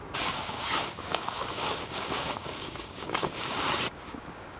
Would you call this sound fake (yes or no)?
yes